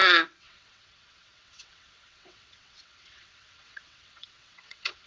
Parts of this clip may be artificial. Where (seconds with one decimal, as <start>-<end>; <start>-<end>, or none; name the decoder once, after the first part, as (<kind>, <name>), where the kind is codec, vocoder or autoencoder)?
0.0-5.1 (vocoder, WaveNeXt)